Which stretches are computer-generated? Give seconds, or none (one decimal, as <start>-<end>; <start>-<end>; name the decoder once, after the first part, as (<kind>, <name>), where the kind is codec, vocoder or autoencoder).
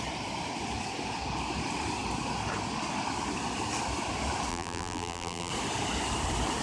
4.5-5.5 (vocoder, BigVGAN v2)